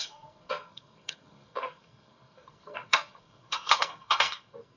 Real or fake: fake